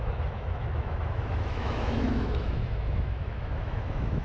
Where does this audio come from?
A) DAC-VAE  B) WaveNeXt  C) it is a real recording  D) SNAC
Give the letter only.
A